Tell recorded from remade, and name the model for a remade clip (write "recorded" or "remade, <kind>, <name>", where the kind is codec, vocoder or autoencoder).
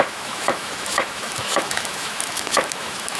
remade, autoencoder, DAC-VAE